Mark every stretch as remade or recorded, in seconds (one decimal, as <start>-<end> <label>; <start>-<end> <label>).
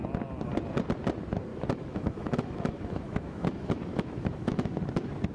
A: 0.0-1.5 recorded; 1.5-4.7 remade; 4.7-5.3 recorded